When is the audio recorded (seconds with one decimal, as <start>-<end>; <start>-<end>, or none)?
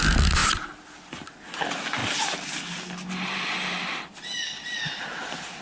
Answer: 0.0-5.6